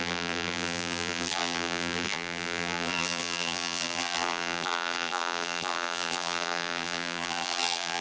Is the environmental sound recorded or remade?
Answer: remade